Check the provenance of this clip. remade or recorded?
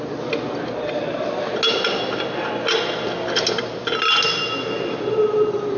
recorded